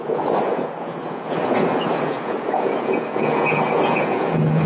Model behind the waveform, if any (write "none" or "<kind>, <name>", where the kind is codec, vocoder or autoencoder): vocoder, Vocos